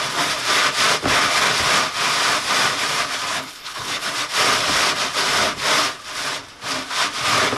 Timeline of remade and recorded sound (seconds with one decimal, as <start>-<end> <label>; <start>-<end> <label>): 0.0-3.3 recorded; 3.3-4.1 remade; 4.1-7.6 recorded